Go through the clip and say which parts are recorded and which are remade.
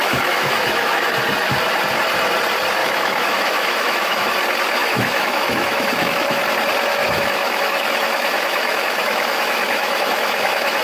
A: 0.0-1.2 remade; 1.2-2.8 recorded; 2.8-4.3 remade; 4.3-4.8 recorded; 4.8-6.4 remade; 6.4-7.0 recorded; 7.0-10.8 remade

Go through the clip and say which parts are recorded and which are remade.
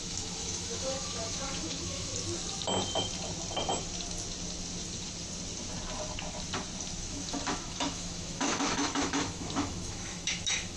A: 0.0-2.1 remade; 2.1-7.0 recorded; 7.0-10.8 remade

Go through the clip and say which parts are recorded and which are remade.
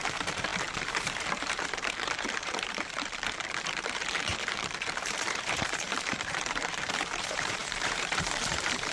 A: 0.0-8.9 remade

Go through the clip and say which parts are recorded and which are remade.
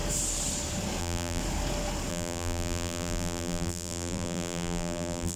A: 0.0-1.0 recorded; 1.0-1.4 remade; 1.4-2.1 recorded; 2.1-5.4 remade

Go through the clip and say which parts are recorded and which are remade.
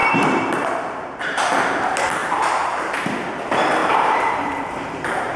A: 0.0-1.4 remade; 1.4-2.2 recorded; 2.2-3.4 remade; 3.4-3.8 recorded; 3.8-5.4 remade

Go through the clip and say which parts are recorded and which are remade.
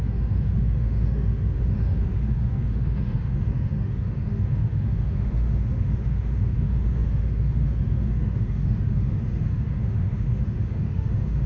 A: 0.0-11.5 remade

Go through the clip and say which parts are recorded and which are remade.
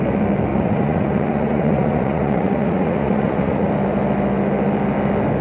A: 0.0-0.5 recorded; 0.5-3.7 remade; 3.7-5.4 recorded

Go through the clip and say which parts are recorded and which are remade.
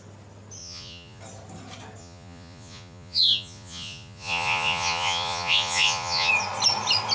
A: 0.0-0.6 recorded; 0.6-1.2 remade; 1.2-2.0 recorded; 2.0-6.3 remade; 6.3-7.1 recorded